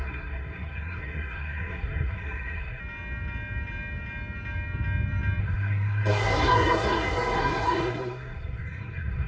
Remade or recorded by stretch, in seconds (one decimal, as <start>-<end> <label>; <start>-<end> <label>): 0.0-2.8 remade; 2.8-5.4 recorded; 5.4-9.3 remade